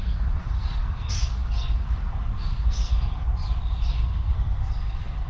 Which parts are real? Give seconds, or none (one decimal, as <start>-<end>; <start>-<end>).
3.3-3.9

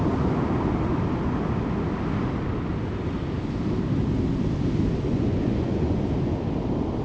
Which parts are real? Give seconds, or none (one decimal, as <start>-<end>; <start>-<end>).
0.0-5.1; 6.0-7.0

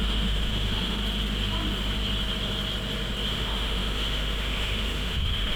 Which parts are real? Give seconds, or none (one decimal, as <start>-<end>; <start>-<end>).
1.0-3.3

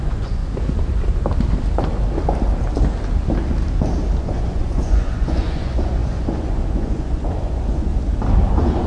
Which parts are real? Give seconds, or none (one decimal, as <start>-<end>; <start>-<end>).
0.4-4.2; 7.9-8.5

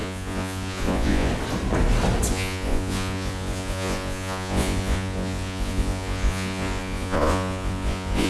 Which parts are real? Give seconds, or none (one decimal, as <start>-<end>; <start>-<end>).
1.3-2.3

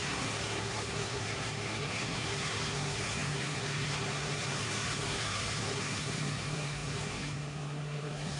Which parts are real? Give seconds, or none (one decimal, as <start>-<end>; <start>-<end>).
none